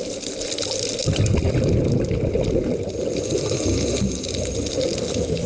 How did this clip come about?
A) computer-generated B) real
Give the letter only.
B